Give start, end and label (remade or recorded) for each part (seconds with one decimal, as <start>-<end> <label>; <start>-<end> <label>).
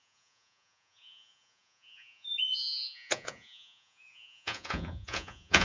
0.0-5.6 remade